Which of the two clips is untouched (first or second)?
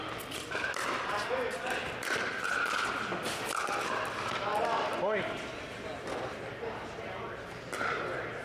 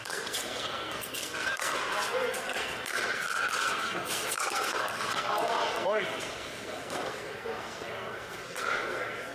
first